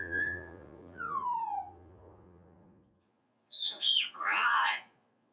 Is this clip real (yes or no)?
no